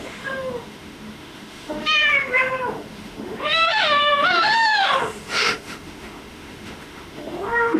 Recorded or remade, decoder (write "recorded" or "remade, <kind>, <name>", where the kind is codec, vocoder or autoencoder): remade, autoencoder, DAC-VAE